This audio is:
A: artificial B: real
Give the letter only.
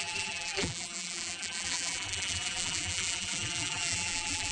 A